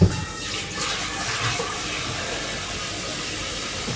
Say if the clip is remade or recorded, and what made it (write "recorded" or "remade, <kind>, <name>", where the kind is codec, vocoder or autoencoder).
recorded